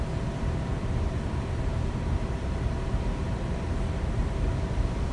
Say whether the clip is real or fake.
fake